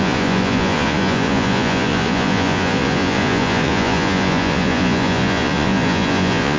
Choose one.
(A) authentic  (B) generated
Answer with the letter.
B